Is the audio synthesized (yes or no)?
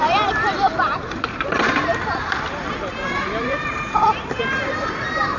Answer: yes